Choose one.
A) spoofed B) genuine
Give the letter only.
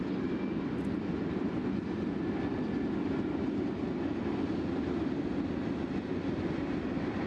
B